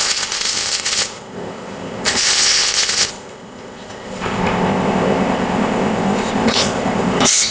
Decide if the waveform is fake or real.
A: fake